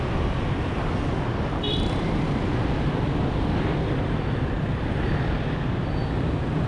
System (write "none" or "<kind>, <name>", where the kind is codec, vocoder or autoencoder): none